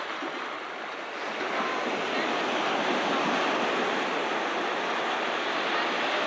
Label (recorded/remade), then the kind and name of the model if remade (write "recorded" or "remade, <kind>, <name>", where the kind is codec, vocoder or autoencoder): recorded